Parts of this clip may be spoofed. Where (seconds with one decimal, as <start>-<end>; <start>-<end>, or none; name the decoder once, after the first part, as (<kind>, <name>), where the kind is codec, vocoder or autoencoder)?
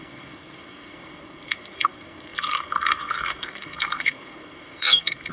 0.0-5.3 (codec, SNAC)